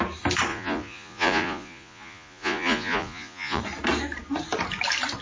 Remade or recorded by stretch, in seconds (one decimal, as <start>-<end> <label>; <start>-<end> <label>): 0.0-0.5 recorded; 0.5-3.6 remade; 3.6-5.2 recorded